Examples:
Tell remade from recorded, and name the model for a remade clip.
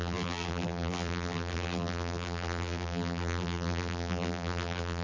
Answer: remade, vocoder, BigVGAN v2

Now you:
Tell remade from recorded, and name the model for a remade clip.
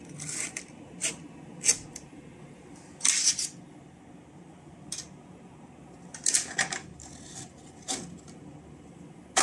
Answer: recorded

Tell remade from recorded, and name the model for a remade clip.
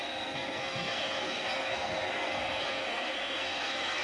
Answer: remade, codec, SNAC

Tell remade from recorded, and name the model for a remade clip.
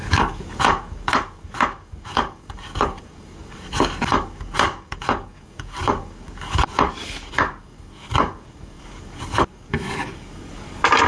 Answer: remade, codec, DAC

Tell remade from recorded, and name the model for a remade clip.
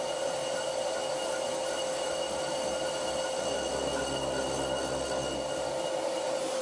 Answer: recorded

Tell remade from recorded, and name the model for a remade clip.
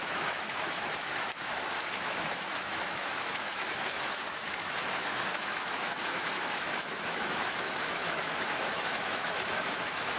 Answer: remade, autoencoder, DAC-VAE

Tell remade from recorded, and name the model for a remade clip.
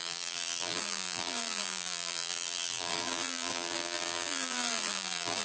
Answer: remade, vocoder, BigVGAN v2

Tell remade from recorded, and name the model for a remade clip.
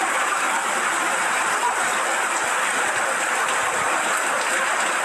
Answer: remade, vocoder, BigVGAN v2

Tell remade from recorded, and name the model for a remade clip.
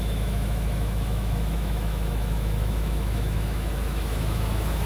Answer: remade, autoencoder, DAC-VAE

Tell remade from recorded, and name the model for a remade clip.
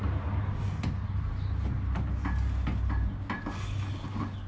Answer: recorded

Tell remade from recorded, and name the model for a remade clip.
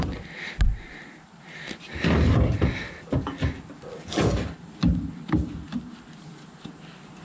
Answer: recorded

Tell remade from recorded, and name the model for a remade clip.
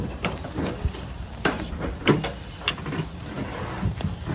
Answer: remade, vocoder, BigVGAN v2